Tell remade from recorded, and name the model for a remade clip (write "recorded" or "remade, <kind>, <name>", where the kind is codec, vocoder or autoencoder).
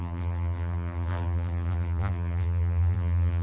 remade, vocoder, BigVGAN v2